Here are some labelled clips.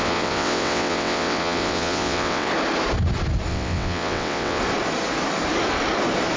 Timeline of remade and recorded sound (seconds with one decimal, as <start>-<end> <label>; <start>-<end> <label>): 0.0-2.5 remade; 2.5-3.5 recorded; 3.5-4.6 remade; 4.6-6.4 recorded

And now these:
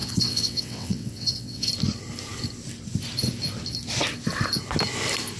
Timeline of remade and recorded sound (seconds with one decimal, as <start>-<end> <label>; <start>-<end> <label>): 0.0-1.7 remade; 1.7-5.4 recorded

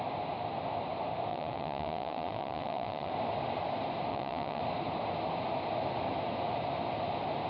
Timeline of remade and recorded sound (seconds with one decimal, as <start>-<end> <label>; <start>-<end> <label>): 0.0-1.3 recorded; 1.3-3.1 remade; 3.1-4.1 recorded; 4.1-4.6 remade; 4.6-7.5 recorded

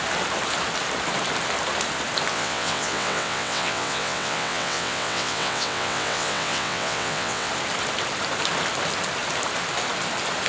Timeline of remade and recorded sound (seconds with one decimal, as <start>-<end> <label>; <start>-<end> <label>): 0.0-2.3 recorded; 2.3-7.5 remade; 7.5-10.5 recorded